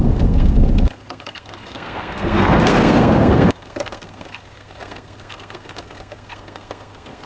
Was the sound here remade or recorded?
remade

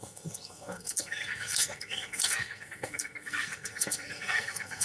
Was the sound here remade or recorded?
remade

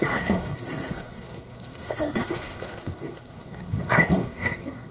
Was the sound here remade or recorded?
remade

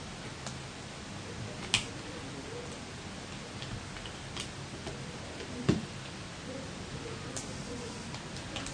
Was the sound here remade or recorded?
recorded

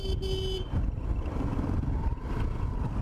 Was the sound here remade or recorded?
recorded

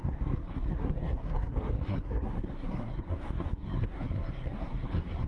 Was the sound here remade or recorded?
remade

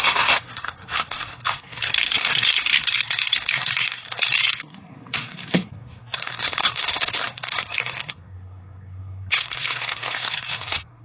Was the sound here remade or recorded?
remade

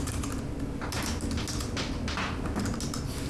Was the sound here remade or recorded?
recorded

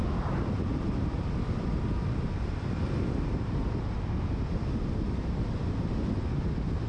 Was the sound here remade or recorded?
recorded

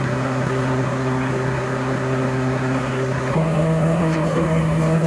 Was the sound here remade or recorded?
remade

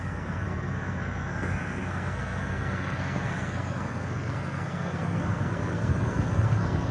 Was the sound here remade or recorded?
remade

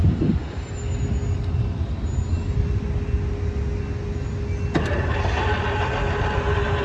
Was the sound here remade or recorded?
recorded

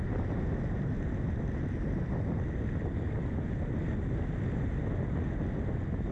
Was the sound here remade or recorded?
recorded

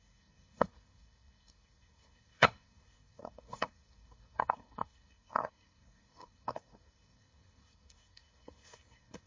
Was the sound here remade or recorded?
remade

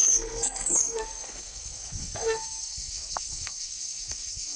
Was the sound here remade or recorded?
remade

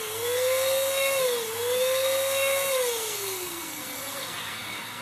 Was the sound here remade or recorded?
remade